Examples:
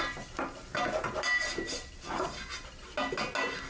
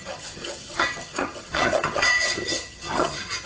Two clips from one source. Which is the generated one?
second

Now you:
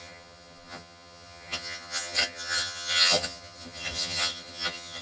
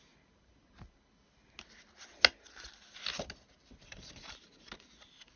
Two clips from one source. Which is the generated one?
first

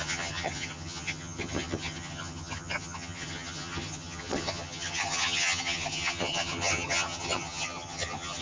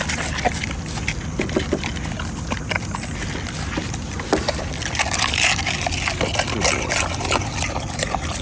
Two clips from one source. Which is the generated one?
first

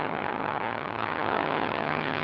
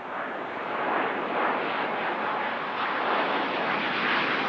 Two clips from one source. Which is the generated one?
first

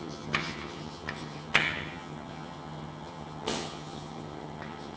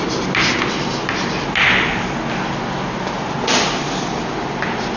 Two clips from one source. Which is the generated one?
first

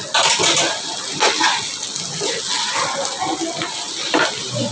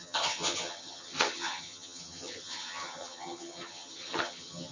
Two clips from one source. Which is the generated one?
second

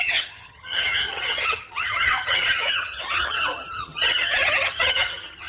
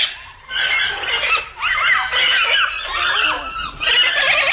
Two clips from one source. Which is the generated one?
first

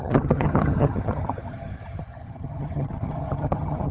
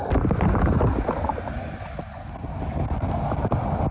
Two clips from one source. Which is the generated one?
first